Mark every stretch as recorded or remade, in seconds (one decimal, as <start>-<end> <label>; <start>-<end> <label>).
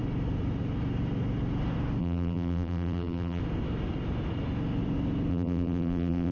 0.0-2.0 recorded; 2.0-3.4 remade; 3.4-5.3 recorded; 5.3-6.3 remade